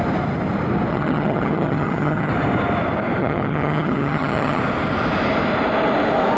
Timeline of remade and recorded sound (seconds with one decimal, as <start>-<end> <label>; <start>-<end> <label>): 0.0-0.9 recorded; 0.9-2.3 remade; 2.3-3.2 recorded; 3.2-4.6 remade; 4.6-6.4 recorded